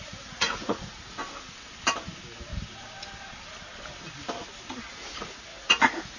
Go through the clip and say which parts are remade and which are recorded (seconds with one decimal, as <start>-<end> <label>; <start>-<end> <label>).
0.0-1.2 remade; 1.2-4.9 recorded; 4.9-6.2 remade